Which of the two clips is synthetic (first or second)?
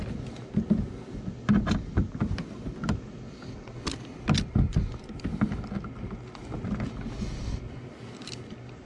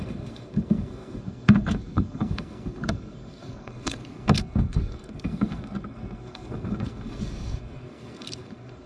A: second